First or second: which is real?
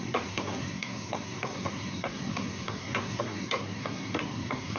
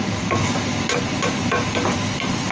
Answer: second